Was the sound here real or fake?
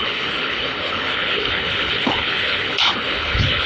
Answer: fake